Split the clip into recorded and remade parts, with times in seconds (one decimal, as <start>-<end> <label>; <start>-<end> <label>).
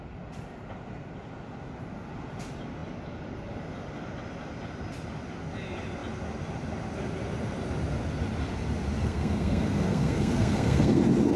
0.0-9.0 recorded; 9.0-11.0 remade; 11.0-11.4 recorded